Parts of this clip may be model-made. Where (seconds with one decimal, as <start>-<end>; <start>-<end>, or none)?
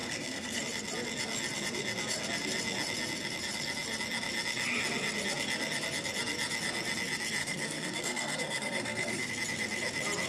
0.0-0.6; 7.4-9.3